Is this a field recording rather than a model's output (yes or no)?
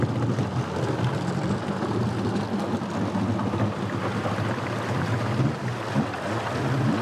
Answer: yes